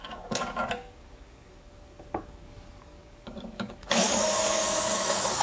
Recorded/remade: remade